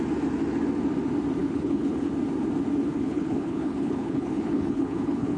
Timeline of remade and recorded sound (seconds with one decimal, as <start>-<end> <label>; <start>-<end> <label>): 0.0-1.4 recorded; 1.4-2.1 remade; 2.1-2.9 recorded; 2.9-5.4 remade